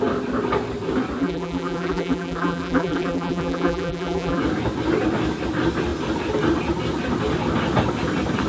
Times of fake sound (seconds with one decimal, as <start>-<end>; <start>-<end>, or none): 1.2-4.4